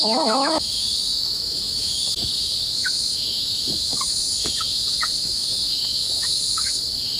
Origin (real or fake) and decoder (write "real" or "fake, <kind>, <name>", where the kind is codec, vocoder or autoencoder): fake, autoencoder, DAC-VAE